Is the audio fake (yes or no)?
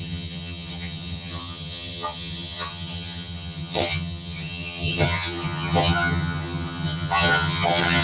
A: yes